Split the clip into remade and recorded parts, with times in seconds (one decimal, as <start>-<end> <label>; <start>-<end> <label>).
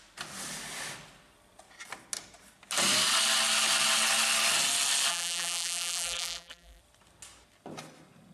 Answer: 0.0-5.1 recorded; 5.1-6.8 remade; 6.8-8.3 recorded